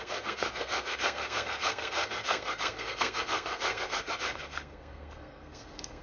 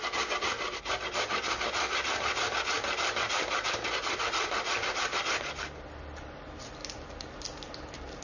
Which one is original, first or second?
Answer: second